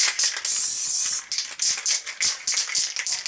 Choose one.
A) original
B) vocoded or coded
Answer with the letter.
A